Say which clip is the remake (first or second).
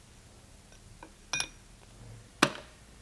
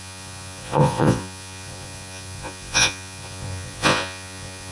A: second